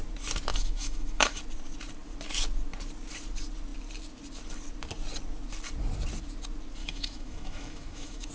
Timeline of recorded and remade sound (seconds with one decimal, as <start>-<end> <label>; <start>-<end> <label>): 0.0-0.5 recorded; 0.5-1.4 remade; 1.4-6.8 recorded; 6.8-8.3 remade